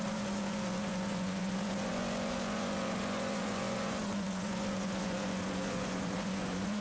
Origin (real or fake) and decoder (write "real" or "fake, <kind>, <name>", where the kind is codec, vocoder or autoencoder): fake, vocoder, Vocos